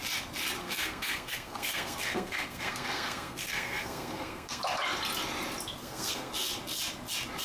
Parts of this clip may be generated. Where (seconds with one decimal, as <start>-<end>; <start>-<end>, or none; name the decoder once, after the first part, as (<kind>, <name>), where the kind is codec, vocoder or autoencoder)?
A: 0.6-4.6 (codec, SNAC); 5.8-6.3